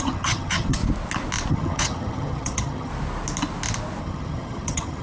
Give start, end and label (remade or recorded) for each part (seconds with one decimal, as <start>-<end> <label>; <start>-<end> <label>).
0.0-0.8 remade; 0.8-1.5 recorded; 1.5-2.9 remade; 2.9-4.0 recorded; 4.0-5.0 remade